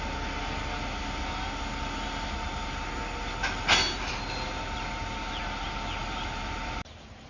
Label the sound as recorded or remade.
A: recorded